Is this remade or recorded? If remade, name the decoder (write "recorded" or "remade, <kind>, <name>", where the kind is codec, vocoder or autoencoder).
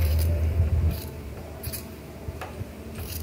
remade, vocoder, BigVGAN v2